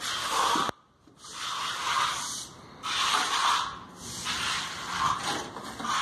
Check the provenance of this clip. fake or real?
real